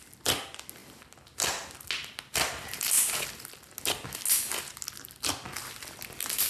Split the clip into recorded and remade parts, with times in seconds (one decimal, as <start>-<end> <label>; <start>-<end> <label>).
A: 0.0-6.5 recorded

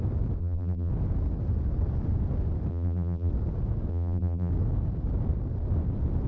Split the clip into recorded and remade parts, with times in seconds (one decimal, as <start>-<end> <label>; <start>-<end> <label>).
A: 0.0-0.4 recorded; 0.4-0.9 remade; 0.9-2.7 recorded; 2.7-3.3 remade; 3.3-3.9 recorded; 3.9-4.5 remade; 4.5-6.3 recorded

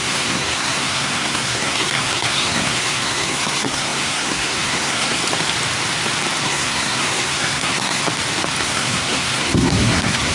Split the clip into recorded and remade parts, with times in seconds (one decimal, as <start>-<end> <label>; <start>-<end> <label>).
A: 0.0-5.2 remade; 5.2-6.4 recorded; 6.4-8.0 remade; 8.0-8.6 recorded; 8.6-10.3 remade

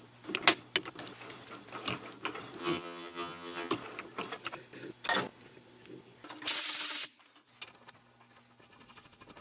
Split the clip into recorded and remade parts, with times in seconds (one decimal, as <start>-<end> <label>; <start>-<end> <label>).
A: 0.0-2.6 recorded; 2.6-3.7 remade; 3.7-9.4 recorded

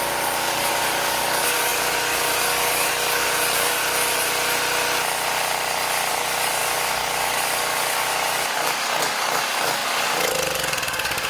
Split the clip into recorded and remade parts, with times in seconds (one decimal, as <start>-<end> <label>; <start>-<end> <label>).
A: 0.0-3.8 remade; 3.8-6.1 recorded; 6.1-11.3 remade

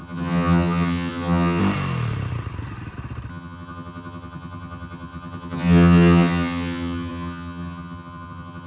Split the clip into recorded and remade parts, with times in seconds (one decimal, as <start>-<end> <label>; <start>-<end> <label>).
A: 0.0-1.6 remade; 1.6-3.3 recorded; 3.3-8.7 remade

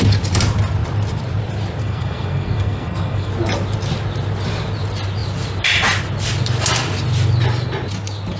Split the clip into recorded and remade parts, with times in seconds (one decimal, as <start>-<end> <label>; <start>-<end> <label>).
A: 0.0-1.8 recorded; 1.8-3.3 remade; 3.3-8.4 recorded

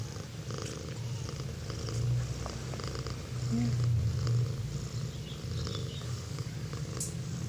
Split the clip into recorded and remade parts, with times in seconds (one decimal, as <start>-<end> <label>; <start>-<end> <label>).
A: 0.0-5.8 recorded; 5.8-6.9 remade; 6.9-7.5 recorded